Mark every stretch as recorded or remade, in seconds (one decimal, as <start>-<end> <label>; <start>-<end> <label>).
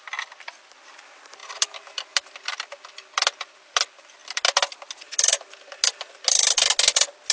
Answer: 0.0-7.3 recorded